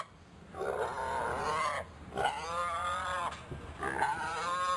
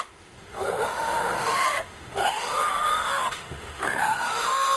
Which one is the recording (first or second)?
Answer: first